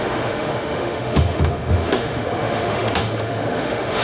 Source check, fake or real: fake